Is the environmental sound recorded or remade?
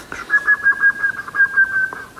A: recorded